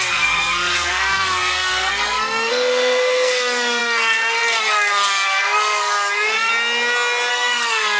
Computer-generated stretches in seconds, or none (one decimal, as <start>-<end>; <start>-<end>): 0.0-6.5; 7.3-8.0